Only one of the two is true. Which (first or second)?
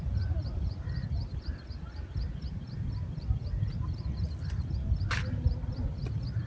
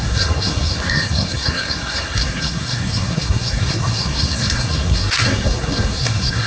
first